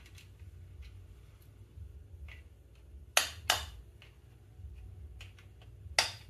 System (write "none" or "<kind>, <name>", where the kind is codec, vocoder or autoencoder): none